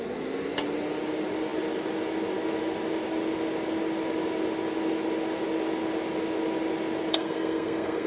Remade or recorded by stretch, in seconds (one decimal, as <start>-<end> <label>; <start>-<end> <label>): 0.0-7.1 recorded; 7.1-8.1 remade